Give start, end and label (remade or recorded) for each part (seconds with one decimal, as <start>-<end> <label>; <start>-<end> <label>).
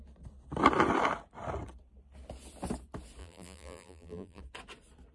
0.0-3.2 recorded; 3.2-4.4 remade; 4.4-5.1 recorded